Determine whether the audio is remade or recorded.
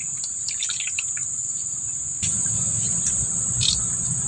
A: recorded